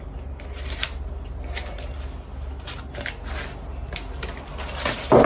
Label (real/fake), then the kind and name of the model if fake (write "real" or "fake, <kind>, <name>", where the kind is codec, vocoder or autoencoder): real